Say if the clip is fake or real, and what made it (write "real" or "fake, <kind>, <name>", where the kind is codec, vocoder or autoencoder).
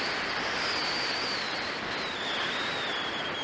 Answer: real